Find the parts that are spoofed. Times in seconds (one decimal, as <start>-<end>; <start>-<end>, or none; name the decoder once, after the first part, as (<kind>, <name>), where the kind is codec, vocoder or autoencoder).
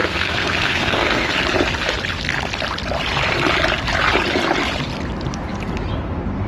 0.0-1.3 (codec, SNAC)